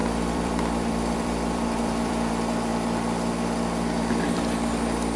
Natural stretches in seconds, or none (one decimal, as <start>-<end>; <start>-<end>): 2.3-5.2